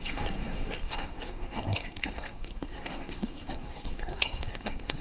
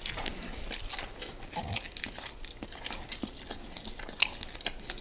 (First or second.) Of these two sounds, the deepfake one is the first